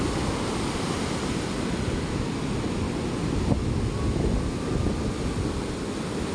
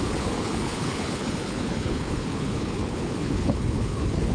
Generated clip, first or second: second